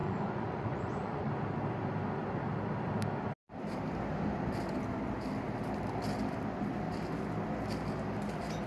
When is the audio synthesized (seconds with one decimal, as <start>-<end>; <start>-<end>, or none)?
0.0-1.3